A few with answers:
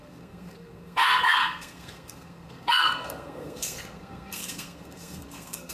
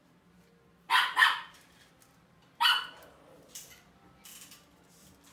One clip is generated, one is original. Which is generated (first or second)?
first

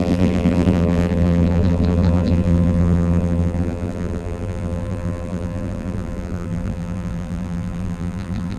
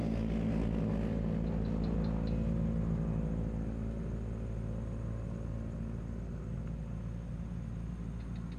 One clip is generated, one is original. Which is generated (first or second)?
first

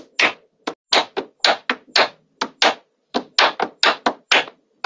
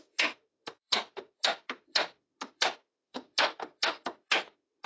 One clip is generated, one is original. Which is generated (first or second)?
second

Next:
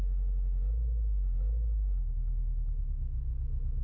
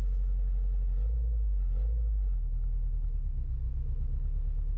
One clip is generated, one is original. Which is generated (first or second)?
first